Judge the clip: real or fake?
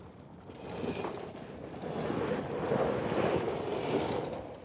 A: real